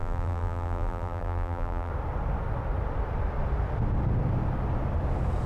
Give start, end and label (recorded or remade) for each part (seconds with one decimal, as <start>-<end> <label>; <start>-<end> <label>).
0.0-1.9 remade; 1.9-5.5 recorded